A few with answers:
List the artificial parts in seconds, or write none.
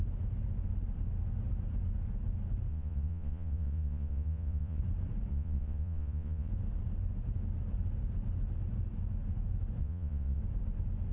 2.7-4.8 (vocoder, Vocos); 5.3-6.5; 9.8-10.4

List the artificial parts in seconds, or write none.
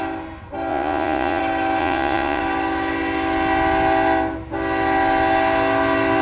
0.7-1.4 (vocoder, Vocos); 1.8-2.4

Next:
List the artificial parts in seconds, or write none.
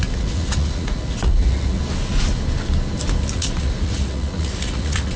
0.0-1.8 (vocoder, Vocos); 3.3-5.2